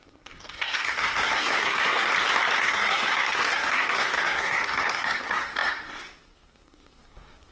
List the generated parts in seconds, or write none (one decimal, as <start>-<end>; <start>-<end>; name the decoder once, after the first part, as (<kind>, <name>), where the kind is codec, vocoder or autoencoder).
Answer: 0.0-2.1 (codec, SNAC); 2.6-7.5